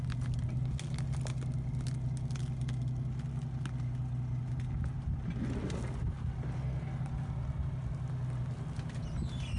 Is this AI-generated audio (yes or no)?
no